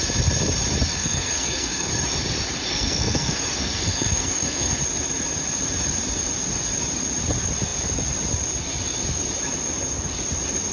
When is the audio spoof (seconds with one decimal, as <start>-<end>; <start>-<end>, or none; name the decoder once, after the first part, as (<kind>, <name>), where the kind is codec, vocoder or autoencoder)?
1.0-1.9 (codec, SNAC); 2.7-4.8